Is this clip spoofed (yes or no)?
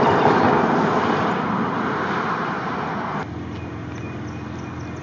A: no